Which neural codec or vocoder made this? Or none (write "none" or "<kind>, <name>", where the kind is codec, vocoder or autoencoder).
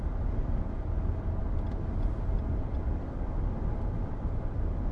none